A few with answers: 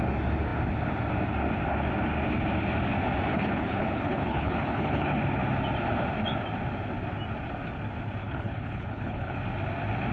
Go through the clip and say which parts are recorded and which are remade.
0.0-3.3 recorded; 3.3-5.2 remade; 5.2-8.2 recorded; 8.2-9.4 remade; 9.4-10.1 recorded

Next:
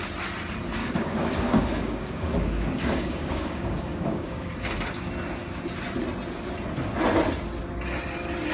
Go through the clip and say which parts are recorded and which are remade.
0.0-0.8 recorded; 0.8-4.5 remade; 4.5-8.5 recorded

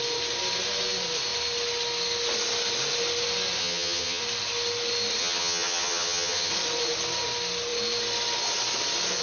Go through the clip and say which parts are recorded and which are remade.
0.0-3.6 recorded; 3.6-4.2 remade; 4.2-5.2 recorded; 5.2-6.5 remade; 6.5-9.2 recorded

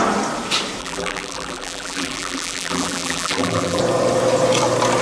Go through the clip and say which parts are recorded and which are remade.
0.0-0.8 recorded; 0.8-3.8 remade; 3.8-5.0 recorded

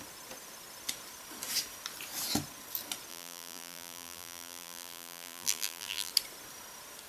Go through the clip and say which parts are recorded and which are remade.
0.0-3.1 recorded; 3.1-6.1 remade; 6.1-7.1 recorded

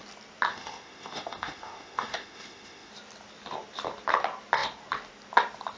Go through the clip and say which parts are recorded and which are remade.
0.0-0.5 recorded; 0.5-2.9 remade; 2.9-5.8 recorded